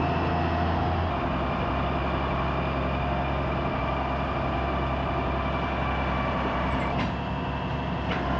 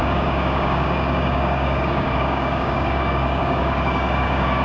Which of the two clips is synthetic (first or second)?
second